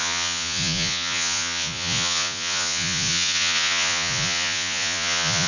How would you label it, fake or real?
fake